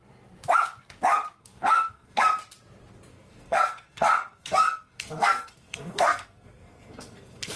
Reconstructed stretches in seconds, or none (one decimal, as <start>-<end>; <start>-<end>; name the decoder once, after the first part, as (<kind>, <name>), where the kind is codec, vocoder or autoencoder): 1.4-2.2 (codec, SNAC); 3.1-7.6